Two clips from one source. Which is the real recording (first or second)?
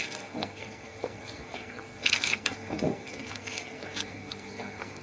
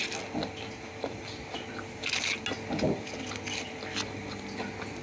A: second